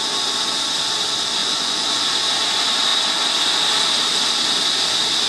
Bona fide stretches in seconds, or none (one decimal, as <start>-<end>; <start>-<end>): 0.0-1.4; 2.0-5.3